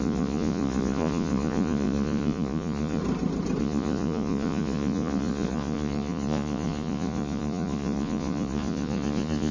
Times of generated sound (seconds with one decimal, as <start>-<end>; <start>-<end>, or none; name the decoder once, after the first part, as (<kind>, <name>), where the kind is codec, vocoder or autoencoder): 0.0-3.0 (vocoder, Vocos); 3.6-9.5